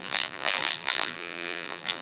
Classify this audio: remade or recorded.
remade